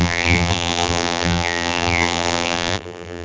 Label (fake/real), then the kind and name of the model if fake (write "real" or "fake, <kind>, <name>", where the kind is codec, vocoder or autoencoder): fake, vocoder, BigVGAN v2